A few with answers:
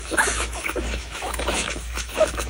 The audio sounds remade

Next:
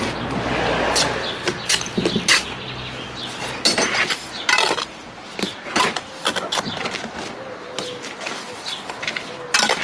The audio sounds recorded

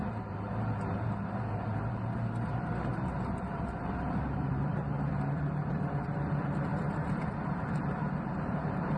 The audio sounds remade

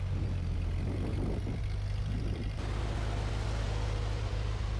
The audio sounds remade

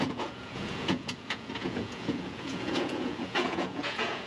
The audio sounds remade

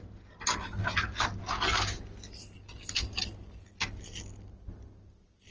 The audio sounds recorded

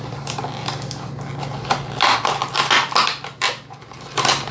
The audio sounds recorded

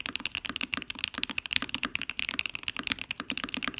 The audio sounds recorded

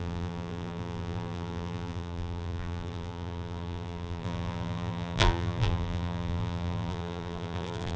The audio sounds remade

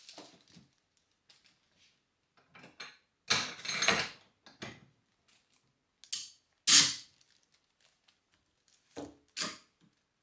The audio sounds recorded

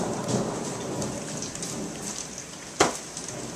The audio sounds recorded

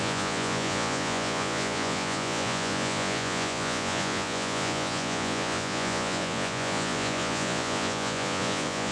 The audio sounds remade